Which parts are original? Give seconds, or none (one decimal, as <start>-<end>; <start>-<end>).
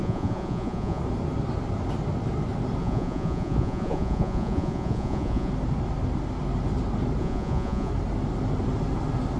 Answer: 1.0-2.8; 5.5-7.2; 7.9-9.4